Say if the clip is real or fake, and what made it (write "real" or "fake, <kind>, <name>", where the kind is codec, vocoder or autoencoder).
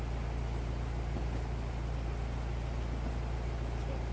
real